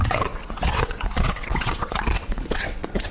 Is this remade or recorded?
remade